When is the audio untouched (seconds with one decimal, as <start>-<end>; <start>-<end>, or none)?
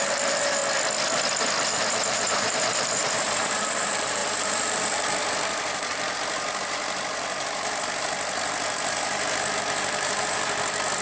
0.6-1.6